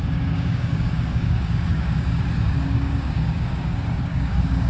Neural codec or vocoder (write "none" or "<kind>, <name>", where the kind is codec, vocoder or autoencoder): codec, DAC